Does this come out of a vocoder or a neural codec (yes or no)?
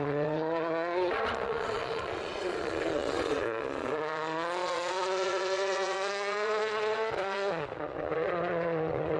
yes